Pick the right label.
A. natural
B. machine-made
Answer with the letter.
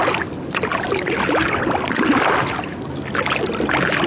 A